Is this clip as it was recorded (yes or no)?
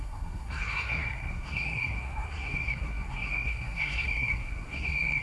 no